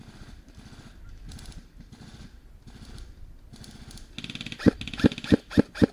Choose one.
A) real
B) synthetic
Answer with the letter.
A